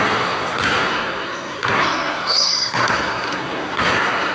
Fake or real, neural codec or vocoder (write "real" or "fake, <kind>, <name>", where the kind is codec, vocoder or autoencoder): fake, codec, SNAC